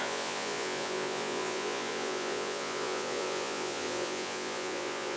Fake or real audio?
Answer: fake